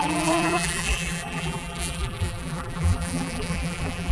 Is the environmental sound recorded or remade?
remade